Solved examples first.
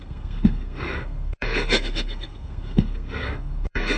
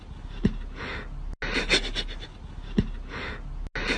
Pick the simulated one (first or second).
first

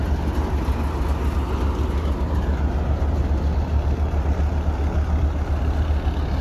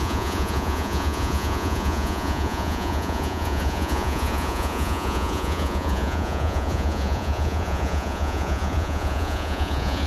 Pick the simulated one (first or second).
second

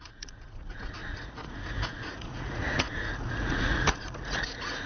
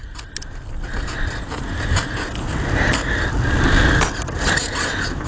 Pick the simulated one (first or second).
first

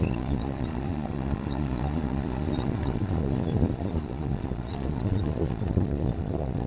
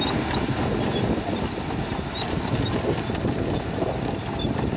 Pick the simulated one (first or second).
first